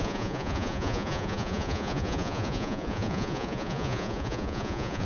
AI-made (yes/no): yes